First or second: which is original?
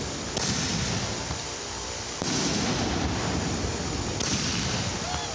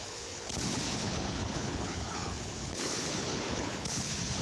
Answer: first